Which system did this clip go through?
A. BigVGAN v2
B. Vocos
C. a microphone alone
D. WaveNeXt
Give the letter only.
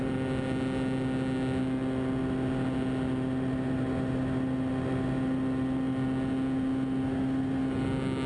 C